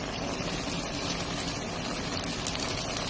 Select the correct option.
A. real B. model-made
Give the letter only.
A